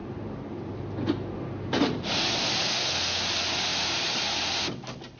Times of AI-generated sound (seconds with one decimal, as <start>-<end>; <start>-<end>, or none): 2.7-3.2